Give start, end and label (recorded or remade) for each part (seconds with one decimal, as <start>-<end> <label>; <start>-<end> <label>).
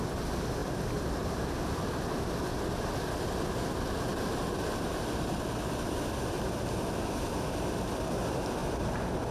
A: 0.0-9.3 recorded